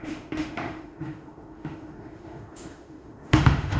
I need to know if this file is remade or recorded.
remade